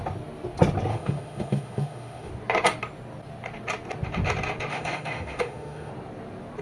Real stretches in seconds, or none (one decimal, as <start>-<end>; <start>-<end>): 0.0-0.9; 2.3-4.7; 5.9-6.6